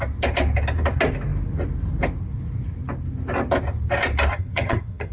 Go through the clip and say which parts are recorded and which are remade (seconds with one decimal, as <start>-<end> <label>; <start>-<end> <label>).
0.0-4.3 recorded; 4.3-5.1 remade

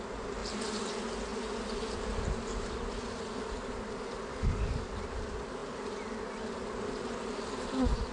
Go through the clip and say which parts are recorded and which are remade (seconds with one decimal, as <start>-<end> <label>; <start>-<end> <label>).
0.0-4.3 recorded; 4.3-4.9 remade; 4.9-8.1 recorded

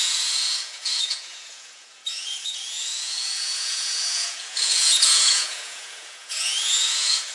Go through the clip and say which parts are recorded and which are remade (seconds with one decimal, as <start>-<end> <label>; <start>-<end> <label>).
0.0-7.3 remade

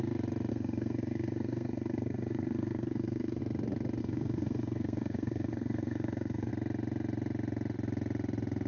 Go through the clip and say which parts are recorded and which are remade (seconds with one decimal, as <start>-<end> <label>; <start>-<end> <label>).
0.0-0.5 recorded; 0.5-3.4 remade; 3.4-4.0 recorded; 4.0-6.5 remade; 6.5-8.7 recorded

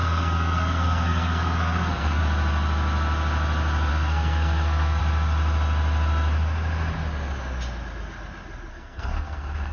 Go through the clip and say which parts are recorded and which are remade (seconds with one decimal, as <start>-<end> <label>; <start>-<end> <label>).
0.0-2.2 remade; 2.2-3.9 recorded; 3.9-5.0 remade; 5.0-8.7 recorded; 8.7-9.7 remade

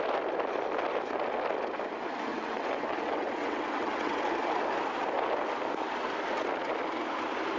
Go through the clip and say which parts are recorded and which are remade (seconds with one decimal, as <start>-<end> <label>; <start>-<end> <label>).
0.0-2.3 recorded; 2.3-4.2 remade; 4.2-7.6 recorded

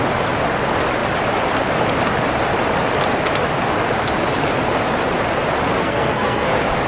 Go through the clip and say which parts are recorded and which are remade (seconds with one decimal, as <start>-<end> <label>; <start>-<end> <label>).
0.0-5.8 recorded; 5.8-6.5 remade; 6.5-6.9 recorded

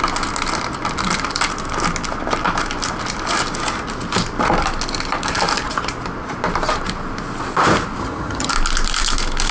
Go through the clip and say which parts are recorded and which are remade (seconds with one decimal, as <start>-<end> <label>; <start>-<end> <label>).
0.0-8.0 recorded; 8.0-8.5 remade; 8.5-9.5 recorded